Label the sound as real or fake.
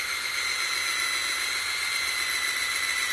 real